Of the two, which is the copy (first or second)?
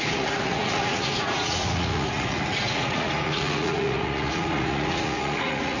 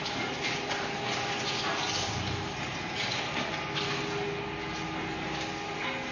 first